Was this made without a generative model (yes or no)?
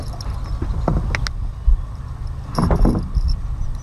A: yes